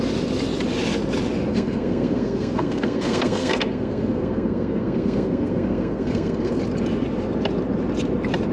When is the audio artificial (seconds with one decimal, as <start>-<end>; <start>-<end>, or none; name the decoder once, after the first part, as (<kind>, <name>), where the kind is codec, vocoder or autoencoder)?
1.5-6.6 (codec, SNAC)